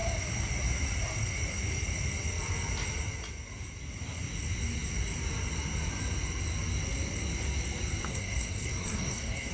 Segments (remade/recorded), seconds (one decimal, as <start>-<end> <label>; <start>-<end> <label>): 0.0-8.1 recorded; 8.1-9.5 remade